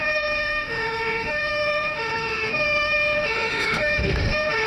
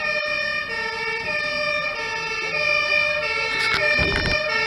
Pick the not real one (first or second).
first